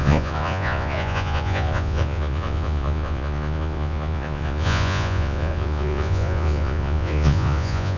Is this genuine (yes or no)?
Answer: no